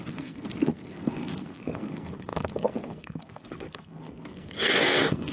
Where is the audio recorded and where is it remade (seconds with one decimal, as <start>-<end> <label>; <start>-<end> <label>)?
0.0-5.3 remade